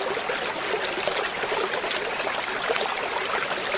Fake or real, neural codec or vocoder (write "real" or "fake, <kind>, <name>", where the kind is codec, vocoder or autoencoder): real